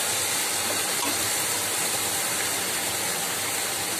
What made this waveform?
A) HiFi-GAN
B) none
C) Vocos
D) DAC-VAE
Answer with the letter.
B